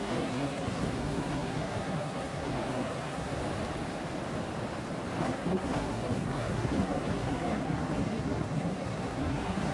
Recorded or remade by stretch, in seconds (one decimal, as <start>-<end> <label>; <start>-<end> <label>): 0.0-3.4 remade; 3.4-5.2 recorded; 5.2-9.7 remade